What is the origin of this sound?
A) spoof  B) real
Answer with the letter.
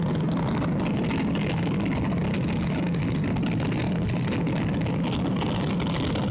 B